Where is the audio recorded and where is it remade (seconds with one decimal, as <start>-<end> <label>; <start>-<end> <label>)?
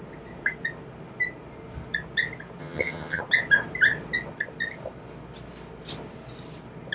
0.0-2.6 recorded; 2.6-3.2 remade; 3.2-6.9 recorded